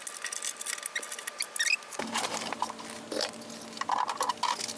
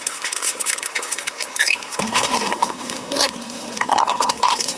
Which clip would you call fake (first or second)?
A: second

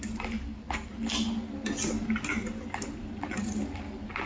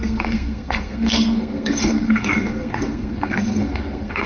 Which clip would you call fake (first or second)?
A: second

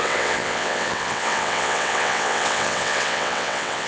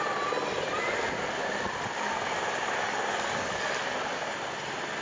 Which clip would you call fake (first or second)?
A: first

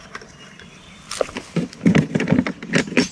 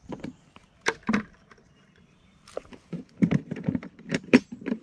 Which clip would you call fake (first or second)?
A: second